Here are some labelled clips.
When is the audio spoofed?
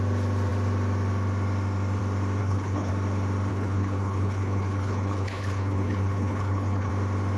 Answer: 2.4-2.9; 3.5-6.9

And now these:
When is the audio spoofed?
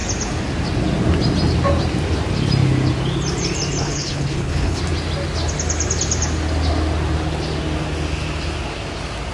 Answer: 3.8-4.8